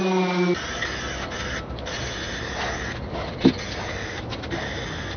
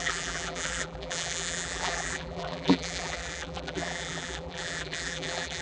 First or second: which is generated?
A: second